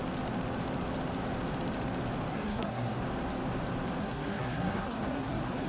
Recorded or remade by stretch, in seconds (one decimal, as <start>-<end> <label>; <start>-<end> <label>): 0.0-2.3 recorded; 2.3-3.0 remade; 3.0-4.0 recorded; 4.0-5.7 remade